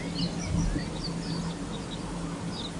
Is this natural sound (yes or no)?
yes